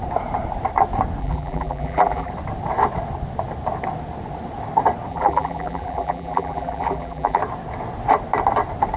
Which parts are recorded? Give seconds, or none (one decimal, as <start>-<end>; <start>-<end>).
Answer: 0.0-1.2; 2.3-5.1; 7.4-9.0